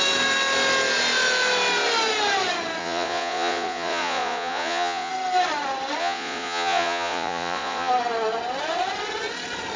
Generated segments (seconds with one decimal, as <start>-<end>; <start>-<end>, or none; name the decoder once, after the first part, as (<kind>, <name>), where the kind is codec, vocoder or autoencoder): 2.8-5.1 (vocoder, Vocos); 6.0-7.9